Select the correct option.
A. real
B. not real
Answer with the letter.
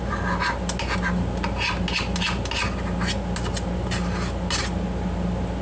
A